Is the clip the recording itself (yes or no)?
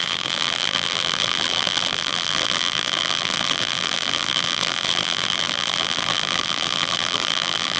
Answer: no